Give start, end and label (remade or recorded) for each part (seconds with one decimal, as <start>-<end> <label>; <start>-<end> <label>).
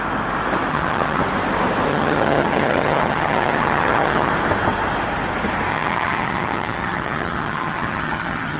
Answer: 0.0-0.7 recorded; 0.7-1.2 remade; 1.2-1.9 recorded; 1.9-4.3 remade; 4.3-5.7 recorded; 5.7-8.6 remade